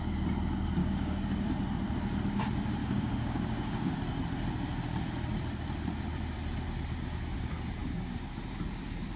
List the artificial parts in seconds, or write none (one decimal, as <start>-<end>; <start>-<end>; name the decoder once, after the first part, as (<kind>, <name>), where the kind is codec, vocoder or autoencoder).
0.8-1.5 (codec, DAC); 2.8-3.9; 7.8-8.4